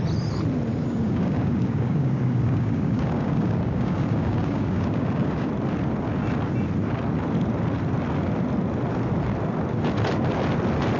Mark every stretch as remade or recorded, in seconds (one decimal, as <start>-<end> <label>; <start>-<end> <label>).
0.0-0.7 recorded; 0.7-5.5 remade; 5.5-11.0 recorded

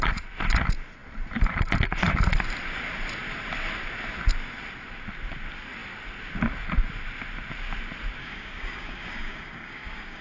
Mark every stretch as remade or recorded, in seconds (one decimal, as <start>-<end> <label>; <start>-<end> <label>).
0.0-8.2 recorded; 8.2-10.2 remade

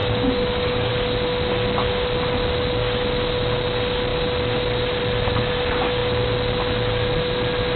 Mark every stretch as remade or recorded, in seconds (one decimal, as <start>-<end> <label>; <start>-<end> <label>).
0.0-0.9 remade; 0.9-7.8 recorded

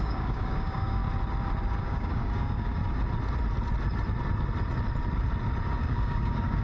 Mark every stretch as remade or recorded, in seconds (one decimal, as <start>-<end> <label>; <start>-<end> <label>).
0.0-1.0 remade; 1.0-1.8 recorded; 1.8-2.8 remade; 2.8-5.8 recorded; 5.8-6.6 remade

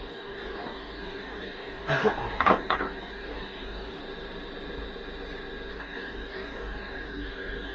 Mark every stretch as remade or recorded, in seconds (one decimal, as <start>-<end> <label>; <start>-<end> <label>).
0.0-4.0 remade; 4.0-5.7 recorded; 5.7-7.7 remade